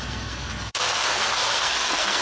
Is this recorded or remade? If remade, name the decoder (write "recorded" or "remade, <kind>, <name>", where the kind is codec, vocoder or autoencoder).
remade, codec, SNAC